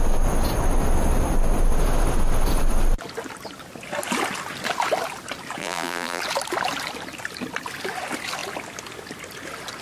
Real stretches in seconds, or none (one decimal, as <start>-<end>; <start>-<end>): 0.0-5.6; 6.2-9.8